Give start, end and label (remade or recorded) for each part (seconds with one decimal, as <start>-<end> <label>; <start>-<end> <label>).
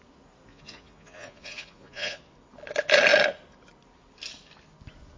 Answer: 0.0-0.5 recorded; 0.5-2.2 remade; 2.2-5.2 recorded